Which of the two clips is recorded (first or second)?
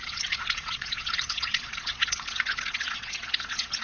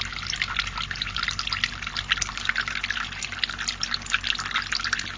second